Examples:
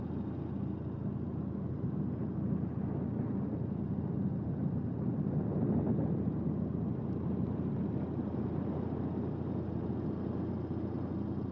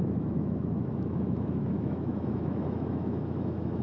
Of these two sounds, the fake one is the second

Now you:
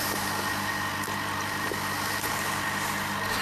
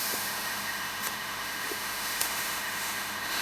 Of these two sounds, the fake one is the second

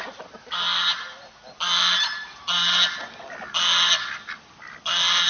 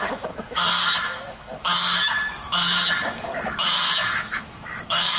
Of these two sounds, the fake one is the second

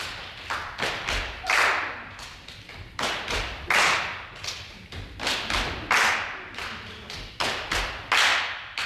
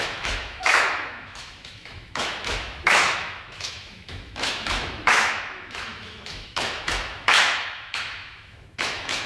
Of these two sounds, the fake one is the second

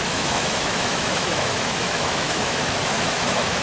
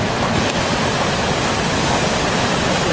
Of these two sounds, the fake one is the first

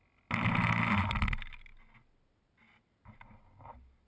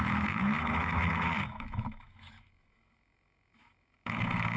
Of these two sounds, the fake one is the second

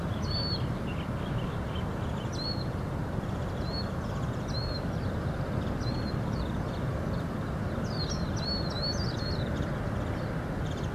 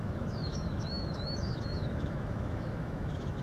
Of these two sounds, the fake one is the second